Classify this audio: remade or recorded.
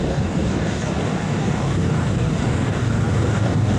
remade